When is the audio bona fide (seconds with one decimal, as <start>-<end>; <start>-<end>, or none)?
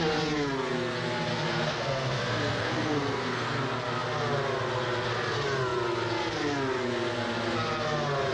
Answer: 0.0-1.3; 3.6-8.3